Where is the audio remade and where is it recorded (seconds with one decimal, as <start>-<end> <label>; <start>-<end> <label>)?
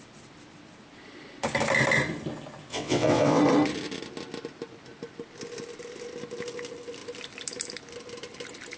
0.0-2.7 recorded; 2.7-3.4 remade; 3.4-8.8 recorded